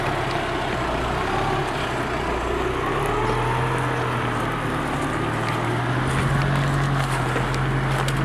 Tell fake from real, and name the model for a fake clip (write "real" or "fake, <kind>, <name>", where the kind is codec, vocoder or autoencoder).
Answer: real